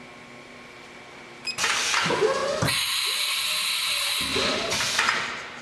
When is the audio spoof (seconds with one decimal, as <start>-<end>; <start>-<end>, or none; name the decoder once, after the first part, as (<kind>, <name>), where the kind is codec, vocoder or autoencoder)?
none